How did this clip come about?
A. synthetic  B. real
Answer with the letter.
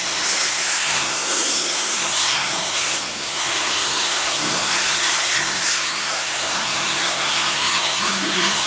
A